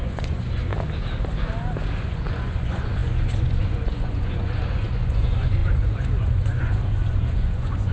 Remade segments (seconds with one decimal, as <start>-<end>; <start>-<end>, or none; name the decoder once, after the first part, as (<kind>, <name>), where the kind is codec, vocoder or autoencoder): 0.0-0.7 (vocoder, Vocos); 2.0-7.9